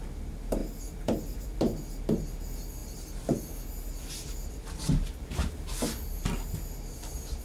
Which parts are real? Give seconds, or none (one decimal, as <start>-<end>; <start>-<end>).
0.0-7.4